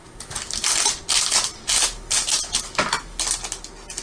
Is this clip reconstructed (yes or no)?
no